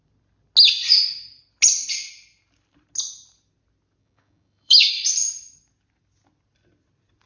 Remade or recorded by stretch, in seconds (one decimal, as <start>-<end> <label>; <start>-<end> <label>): 0.0-4.0 recorded; 4.0-4.9 remade; 4.9-7.3 recorded

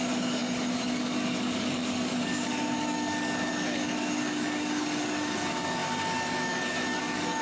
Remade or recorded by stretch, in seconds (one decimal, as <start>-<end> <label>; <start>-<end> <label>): 0.0-7.4 remade

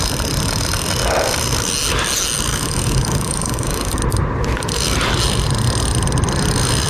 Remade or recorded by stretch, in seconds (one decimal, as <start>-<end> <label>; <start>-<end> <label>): 0.0-2.5 recorded; 2.5-4.0 remade; 4.0-6.9 recorded

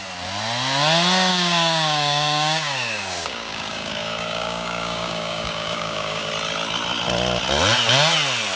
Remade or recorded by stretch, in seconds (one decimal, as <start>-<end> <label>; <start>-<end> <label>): 0.0-1.3 recorded; 1.3-6.3 remade; 6.3-8.6 recorded